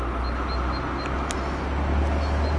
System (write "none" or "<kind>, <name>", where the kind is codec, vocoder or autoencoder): none